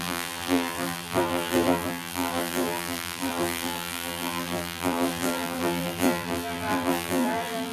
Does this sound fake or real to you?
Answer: fake